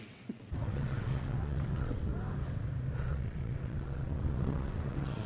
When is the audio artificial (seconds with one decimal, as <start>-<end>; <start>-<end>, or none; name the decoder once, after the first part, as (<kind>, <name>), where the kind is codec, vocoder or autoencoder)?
0.0-2.1 (vocoder, WaveNeXt); 3.0-5.3